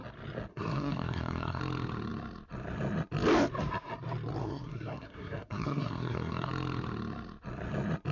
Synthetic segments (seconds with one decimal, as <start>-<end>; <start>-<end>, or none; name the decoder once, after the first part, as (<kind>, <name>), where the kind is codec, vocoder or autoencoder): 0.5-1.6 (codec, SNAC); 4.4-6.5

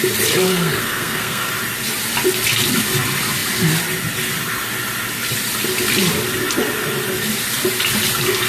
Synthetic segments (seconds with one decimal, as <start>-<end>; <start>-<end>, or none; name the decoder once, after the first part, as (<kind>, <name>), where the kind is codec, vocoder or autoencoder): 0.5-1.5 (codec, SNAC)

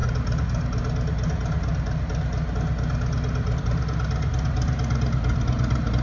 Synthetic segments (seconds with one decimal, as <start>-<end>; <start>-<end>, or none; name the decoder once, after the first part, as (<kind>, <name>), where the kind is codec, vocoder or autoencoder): none

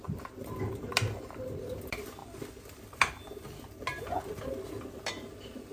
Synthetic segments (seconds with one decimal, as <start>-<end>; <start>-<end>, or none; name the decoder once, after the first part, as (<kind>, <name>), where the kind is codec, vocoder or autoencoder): none